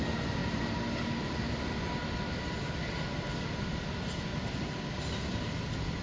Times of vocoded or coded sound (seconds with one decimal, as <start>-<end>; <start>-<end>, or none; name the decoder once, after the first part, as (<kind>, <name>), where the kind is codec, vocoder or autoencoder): none

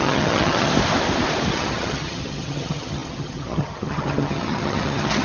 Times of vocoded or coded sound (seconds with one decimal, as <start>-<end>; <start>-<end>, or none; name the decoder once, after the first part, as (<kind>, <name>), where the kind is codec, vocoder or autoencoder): 0.0-0.7 (vocoder, HiFi-GAN); 1.5-5.2

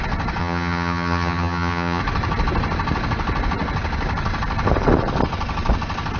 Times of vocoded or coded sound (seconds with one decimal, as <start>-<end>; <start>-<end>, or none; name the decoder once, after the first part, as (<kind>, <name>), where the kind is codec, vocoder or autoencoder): 0.4-2.0 (vocoder, HiFi-GAN)